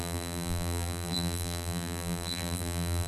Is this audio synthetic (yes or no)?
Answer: yes